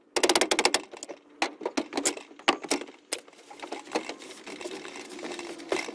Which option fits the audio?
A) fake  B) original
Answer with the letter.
B